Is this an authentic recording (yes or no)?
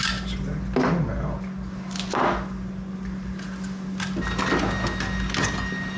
yes